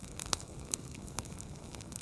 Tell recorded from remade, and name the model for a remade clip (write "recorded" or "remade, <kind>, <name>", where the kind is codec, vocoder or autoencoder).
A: remade, codec, SNAC